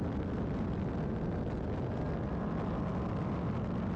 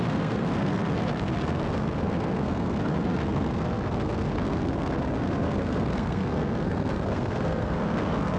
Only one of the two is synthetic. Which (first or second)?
second